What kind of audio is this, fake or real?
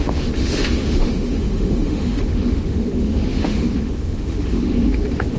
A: fake